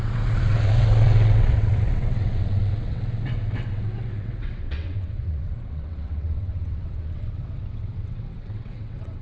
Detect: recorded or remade remade